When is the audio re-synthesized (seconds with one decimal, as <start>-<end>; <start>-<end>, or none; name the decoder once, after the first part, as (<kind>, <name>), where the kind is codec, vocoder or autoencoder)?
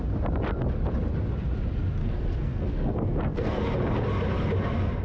2.0-3.6 (codec, SNAC)